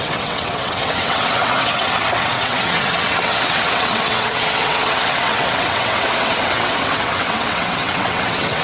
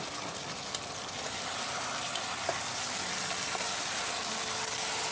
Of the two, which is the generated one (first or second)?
first